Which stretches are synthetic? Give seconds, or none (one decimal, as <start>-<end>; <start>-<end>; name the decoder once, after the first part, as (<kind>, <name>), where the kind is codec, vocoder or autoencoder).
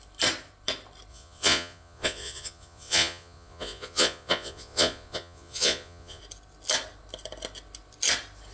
1.1-6.2 (vocoder, Vocos)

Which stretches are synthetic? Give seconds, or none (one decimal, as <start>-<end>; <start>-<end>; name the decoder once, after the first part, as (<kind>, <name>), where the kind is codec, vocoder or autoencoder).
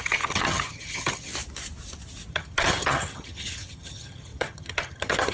0.0-1.3 (vocoder, HiFi-GAN); 2.3-5.3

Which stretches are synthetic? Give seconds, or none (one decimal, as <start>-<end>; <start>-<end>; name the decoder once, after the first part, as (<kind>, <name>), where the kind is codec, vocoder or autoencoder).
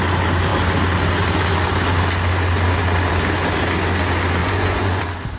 4.4-5.0 (vocoder, Vocos)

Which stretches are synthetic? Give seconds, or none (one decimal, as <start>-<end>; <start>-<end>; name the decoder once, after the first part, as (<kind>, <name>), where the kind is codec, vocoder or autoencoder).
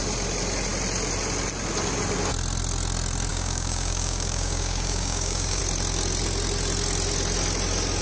3.3-5.6 (codec, DAC)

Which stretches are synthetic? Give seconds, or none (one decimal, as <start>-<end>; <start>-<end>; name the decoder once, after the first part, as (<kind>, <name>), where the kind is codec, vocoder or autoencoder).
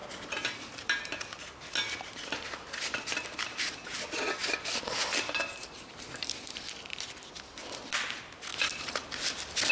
0.0-1.7 (vocoder, BigVGAN v2); 4.4-8.0; 8.5-9.7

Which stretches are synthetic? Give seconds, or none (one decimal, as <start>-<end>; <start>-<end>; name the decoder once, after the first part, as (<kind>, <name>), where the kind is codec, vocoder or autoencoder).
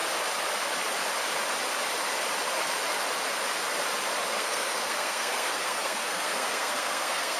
4.3-7.4 (codec, SNAC)